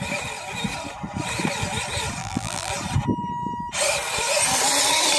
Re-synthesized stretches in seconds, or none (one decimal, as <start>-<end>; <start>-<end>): 2.2-2.7